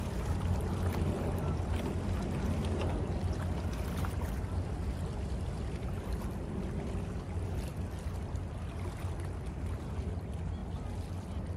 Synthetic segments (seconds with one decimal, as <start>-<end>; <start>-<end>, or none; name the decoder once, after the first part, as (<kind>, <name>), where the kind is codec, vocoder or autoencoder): 10.6-11.1 (vocoder, BigVGAN v2)